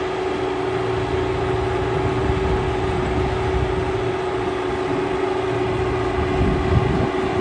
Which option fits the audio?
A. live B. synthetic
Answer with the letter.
A